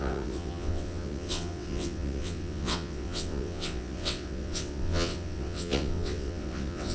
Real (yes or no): no